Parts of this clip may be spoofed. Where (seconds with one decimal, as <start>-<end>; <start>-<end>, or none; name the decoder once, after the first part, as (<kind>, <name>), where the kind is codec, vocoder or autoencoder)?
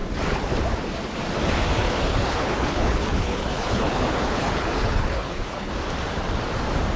1.8-5.7 (codec, HILCodec)